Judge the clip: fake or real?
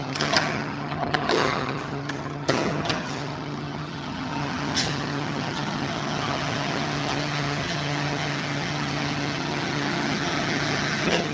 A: fake